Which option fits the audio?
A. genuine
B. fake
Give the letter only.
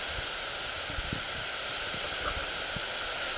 A